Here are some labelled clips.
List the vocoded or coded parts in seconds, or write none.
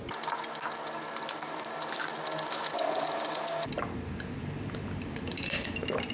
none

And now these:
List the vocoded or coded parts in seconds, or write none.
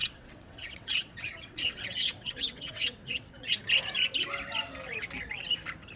0.0-3.6 (vocoder, WaveNeXt)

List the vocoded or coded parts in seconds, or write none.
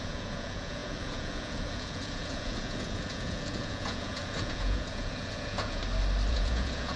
0.0-5.8 (vocoder, Vocos); 6.3-7.0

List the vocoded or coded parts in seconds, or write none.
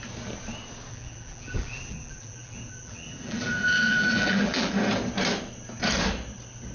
0.9-4.7 (vocoder, BigVGAN v2)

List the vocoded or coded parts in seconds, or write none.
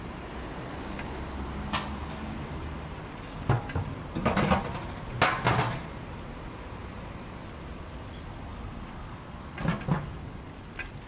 none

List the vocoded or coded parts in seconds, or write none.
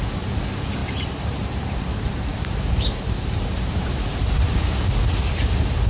0.8-1.7 (vocoder, BigVGAN v2); 2.3-4.8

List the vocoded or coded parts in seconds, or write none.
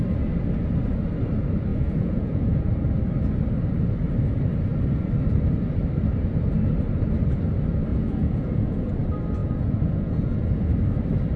1.7-2.7 (vocoder, Vocos); 7.9-8.9; 9.4-10.6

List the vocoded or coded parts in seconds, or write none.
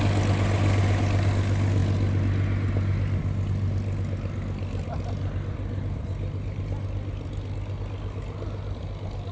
none